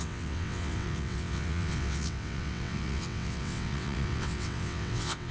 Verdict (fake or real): fake